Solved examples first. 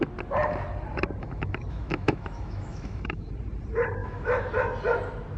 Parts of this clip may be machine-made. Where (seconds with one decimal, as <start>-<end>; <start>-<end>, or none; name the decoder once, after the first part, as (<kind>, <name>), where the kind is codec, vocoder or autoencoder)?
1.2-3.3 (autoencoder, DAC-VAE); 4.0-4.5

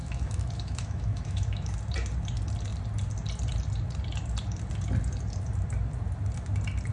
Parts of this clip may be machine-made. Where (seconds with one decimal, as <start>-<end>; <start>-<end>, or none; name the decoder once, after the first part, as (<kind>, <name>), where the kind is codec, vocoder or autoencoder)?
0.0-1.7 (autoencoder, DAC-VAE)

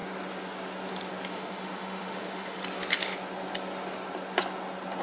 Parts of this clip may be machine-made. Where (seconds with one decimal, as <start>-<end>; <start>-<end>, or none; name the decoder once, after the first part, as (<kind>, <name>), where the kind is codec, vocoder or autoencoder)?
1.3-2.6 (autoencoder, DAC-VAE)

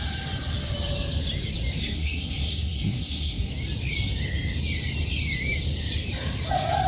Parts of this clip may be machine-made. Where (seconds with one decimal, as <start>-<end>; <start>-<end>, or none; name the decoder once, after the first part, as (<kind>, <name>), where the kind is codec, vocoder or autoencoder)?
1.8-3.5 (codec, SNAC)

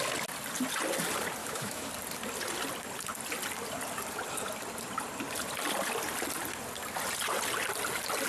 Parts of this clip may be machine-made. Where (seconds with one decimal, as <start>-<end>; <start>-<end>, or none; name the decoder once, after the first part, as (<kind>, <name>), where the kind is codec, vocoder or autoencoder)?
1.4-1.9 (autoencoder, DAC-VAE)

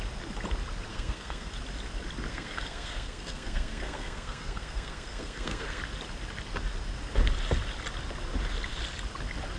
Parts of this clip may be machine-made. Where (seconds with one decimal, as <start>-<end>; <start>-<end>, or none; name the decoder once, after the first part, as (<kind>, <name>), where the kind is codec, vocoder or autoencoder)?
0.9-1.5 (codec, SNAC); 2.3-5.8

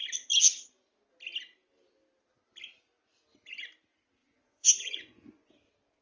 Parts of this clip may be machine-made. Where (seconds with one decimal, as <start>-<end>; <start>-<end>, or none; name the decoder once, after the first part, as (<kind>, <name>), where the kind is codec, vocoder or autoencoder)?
4.2-5.5 (vocoder, Vocos)

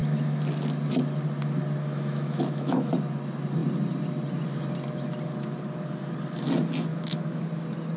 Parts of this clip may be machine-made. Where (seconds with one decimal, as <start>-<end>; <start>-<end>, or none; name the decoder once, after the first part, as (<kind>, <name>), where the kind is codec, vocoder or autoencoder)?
1.8-2.9 (autoencoder, DAC-VAE); 6.9-7.4